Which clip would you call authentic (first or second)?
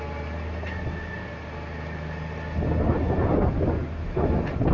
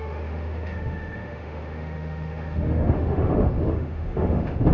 first